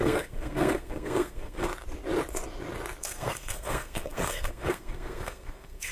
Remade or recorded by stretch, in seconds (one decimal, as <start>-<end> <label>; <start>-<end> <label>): 0.0-1.7 remade; 1.7-3.0 recorded; 3.0-5.9 remade